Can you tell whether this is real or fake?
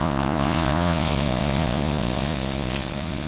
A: fake